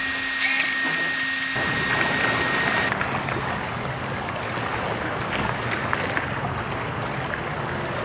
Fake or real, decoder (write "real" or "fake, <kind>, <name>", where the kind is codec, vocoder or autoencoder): real